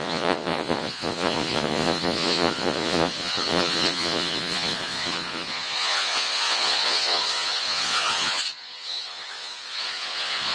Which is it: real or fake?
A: fake